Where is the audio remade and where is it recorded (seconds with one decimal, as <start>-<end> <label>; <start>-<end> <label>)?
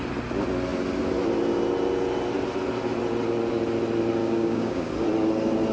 0.0-4.2 recorded; 4.2-4.9 remade; 4.9-5.7 recorded